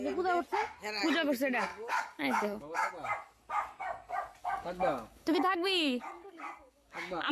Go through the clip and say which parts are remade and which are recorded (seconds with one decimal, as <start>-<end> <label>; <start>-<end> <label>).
0.0-1.7 recorded; 1.7-2.9 remade; 2.9-4.4 recorded; 4.4-7.3 remade